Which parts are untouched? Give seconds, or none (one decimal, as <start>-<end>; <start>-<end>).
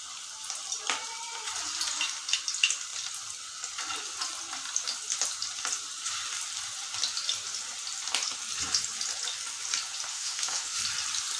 0.0-10.1; 10.8-11.4